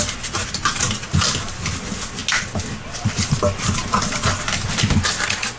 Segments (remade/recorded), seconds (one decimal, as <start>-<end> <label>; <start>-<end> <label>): 0.0-5.6 recorded